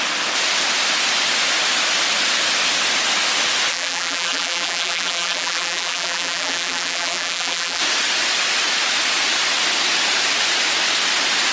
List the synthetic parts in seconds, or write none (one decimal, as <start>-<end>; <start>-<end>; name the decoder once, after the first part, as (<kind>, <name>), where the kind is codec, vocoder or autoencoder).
3.7-7.8 (vocoder, BigVGAN v2)